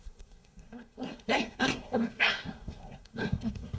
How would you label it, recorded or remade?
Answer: remade